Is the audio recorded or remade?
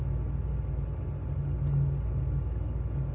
recorded